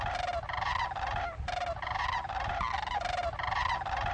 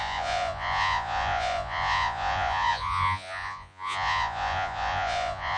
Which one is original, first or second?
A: first